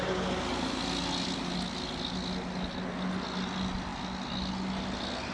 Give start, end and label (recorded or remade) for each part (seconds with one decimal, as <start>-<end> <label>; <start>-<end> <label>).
0.0-5.3 recorded